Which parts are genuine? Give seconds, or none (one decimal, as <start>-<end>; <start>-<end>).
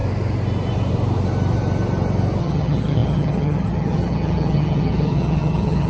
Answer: 0.0-2.4